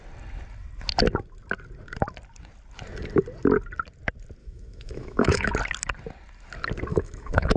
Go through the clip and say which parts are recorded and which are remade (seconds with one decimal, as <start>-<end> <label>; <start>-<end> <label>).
0.0-4.4 recorded; 4.4-5.5 remade; 5.5-6.9 recorded; 6.9-7.6 remade